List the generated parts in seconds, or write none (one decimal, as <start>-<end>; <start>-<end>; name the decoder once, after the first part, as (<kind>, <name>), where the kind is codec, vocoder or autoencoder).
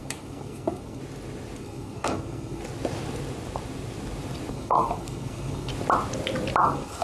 0.0-1.0 (codec, SNAC); 1.6-2.6; 4.5-5.7; 6.6-7.0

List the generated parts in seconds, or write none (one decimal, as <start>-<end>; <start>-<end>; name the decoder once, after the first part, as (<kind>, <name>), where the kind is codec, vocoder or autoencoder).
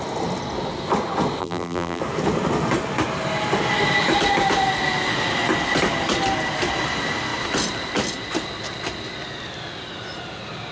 1.4-2.0 (vocoder, BigVGAN v2)